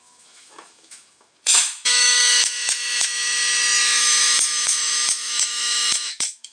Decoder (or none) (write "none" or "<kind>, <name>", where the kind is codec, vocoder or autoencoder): autoencoder, DAC-VAE